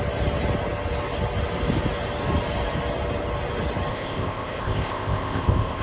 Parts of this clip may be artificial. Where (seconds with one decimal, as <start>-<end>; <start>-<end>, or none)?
3.9-5.8